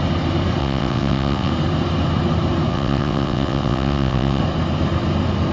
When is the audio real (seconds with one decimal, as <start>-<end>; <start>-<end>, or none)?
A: 0.0-0.6; 1.5-2.7; 4.4-5.5